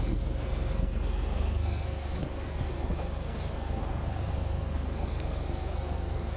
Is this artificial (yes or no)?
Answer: yes